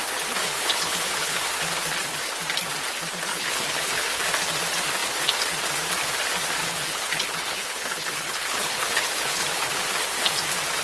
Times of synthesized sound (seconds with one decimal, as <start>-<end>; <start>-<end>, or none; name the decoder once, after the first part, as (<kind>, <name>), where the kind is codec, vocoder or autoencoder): 0.4-1.5 (codec, HILCodec); 3.3-4.2; 6.6-9.8